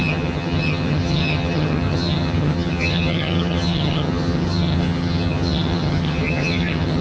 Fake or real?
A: fake